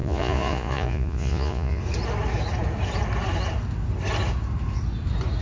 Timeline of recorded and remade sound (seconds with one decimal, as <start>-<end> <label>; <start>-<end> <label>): 0.0-1.8 remade; 1.8-5.4 recorded